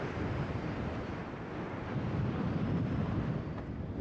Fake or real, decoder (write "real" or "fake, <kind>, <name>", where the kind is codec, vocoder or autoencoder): fake, vocoder, BigVGAN v2